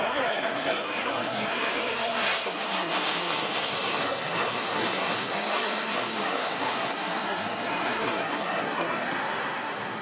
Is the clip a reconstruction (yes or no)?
yes